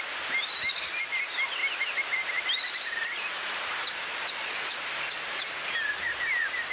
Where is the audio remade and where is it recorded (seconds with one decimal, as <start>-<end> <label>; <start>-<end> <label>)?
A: 0.0-6.7 recorded